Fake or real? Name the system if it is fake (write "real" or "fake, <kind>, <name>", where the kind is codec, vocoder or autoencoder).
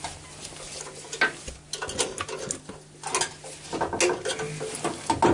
real